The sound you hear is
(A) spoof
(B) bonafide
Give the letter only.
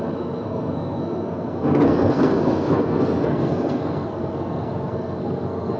A